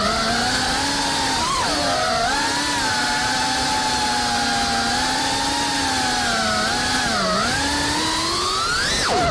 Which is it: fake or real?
real